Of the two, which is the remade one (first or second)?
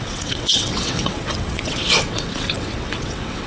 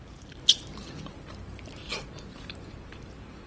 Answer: first